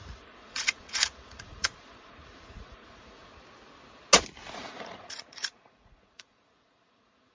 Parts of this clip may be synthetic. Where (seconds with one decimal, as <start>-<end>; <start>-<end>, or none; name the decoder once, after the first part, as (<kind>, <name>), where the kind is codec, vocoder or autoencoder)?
0.0-3.3 (vocoder, Vocos); 4.5-7.3